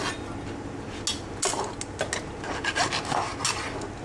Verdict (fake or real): real